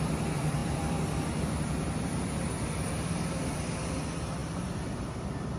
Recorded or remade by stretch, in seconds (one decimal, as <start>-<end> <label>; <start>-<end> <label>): 0.0-5.6 remade